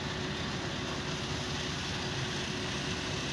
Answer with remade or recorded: recorded